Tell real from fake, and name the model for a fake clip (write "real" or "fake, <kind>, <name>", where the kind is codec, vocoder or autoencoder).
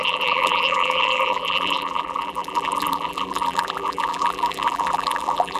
fake, vocoder, BigVGAN v2